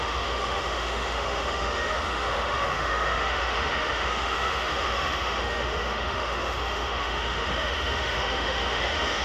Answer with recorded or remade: remade